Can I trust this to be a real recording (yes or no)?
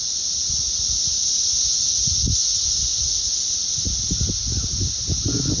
yes